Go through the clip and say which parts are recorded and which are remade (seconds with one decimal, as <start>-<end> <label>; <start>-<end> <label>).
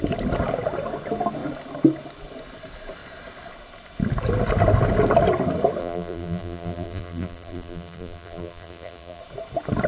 0.0-5.8 recorded; 5.8-9.2 remade; 9.2-9.9 recorded